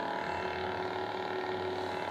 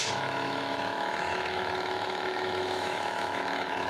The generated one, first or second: second